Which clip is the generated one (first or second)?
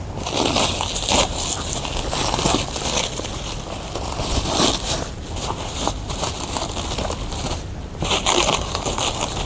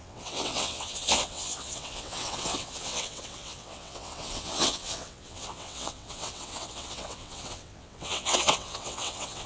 second